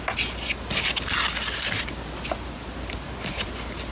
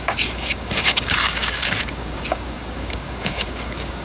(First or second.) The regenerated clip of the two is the second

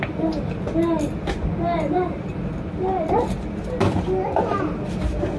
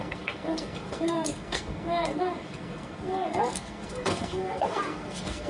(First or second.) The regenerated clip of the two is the second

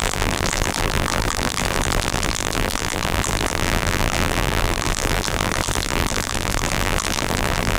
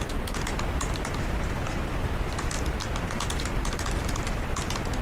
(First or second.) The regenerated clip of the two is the first